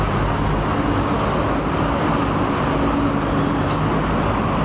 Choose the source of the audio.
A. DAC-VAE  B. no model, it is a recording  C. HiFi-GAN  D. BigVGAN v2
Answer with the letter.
B